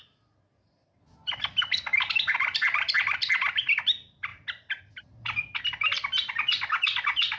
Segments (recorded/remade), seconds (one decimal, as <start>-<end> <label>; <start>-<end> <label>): 0.0-7.4 recorded